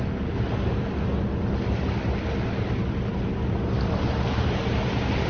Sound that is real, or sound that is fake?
real